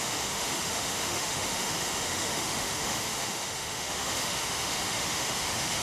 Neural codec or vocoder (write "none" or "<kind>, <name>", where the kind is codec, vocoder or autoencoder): autoencoder, DAC-VAE